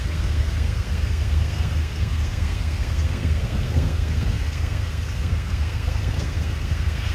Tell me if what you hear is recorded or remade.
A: remade